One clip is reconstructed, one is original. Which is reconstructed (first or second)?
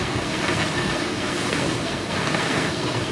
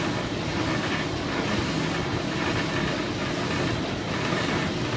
first